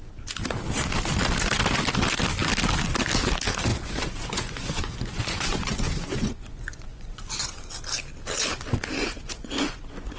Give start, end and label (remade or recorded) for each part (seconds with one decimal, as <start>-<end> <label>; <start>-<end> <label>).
0.0-3.7 recorded; 3.7-7.7 remade; 7.7-9.0 recorded; 9.0-10.2 remade